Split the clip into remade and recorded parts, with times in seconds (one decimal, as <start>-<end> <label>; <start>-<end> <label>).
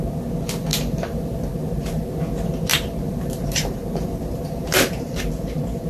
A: 0.0-0.7 recorded; 0.7-2.2 remade; 2.2-2.7 recorded; 2.7-5.2 remade; 5.2-5.9 recorded